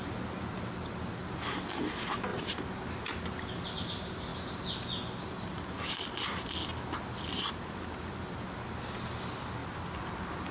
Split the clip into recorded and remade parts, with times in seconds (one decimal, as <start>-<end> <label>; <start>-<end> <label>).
0.0-10.5 recorded